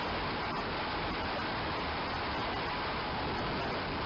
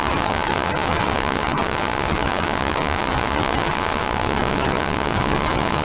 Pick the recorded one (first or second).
first